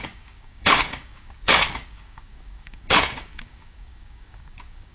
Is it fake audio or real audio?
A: fake